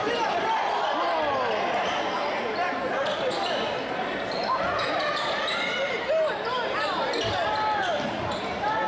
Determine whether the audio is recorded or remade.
recorded